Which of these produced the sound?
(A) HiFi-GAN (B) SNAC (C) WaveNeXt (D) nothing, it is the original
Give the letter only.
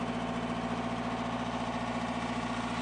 D